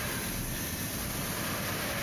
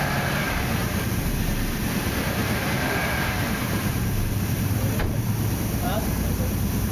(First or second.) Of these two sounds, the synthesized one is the second